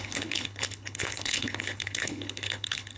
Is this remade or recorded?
remade